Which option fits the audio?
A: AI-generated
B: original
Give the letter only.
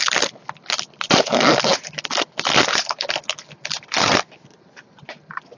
B